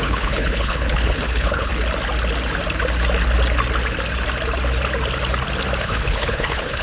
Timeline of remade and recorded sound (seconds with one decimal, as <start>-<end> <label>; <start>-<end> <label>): 0.0-1.7 remade; 1.7-5.8 recorded; 5.8-6.8 remade